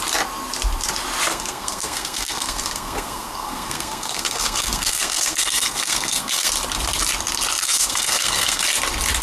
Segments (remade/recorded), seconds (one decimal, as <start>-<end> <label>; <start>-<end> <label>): 0.0-1.3 recorded; 1.3-6.5 remade; 6.5-7.6 recorded; 7.6-8.6 remade; 8.6-9.2 recorded